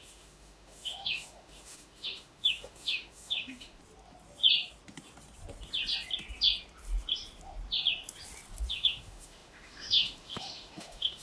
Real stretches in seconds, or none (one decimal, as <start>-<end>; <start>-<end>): 3.8-8.7